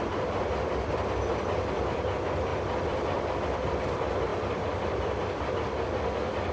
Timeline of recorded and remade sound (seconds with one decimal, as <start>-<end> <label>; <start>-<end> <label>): 0.0-2.5 recorded; 2.5-3.3 remade; 3.3-4.3 recorded; 4.3-5.5 remade; 5.5-6.5 recorded

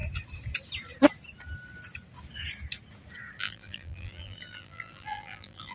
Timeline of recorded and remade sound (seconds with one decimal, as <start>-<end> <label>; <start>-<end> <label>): 0.0-3.4 recorded; 3.4-5.7 remade

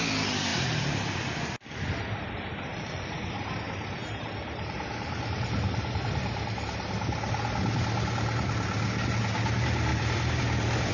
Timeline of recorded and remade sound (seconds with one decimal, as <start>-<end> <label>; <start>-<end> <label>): 0.0-0.5 recorded; 0.5-1.2 remade; 1.2-2.7 recorded; 2.7-6.0 remade; 6.0-9.9 recorded; 9.9-10.9 remade